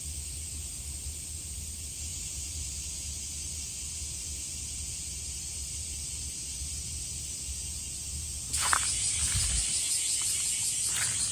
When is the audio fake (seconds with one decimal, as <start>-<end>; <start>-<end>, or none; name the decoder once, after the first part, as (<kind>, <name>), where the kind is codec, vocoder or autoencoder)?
none